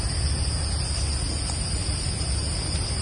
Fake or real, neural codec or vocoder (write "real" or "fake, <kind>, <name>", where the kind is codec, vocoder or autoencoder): real